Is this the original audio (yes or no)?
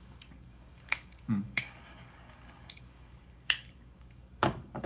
no